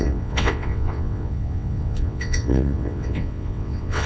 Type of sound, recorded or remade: remade